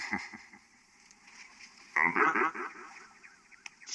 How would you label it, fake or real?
fake